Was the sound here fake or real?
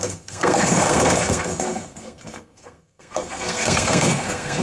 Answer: fake